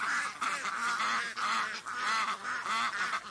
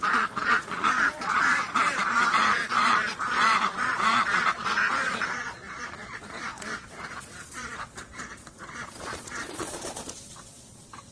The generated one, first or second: second